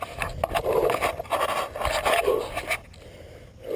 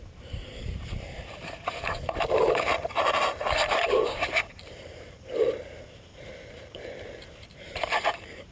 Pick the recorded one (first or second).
first